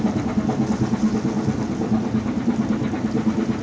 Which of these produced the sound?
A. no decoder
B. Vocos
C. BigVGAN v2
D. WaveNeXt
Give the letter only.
A